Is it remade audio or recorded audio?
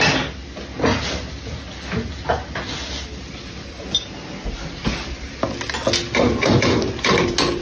recorded